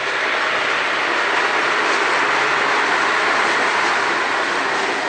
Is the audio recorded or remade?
recorded